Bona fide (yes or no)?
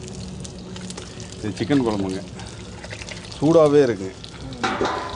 yes